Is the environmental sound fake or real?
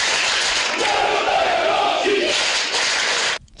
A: fake